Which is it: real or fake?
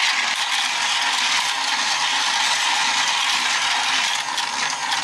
real